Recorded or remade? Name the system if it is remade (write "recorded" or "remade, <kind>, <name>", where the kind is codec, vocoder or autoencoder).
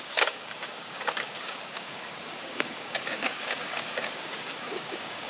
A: remade, codec, DAC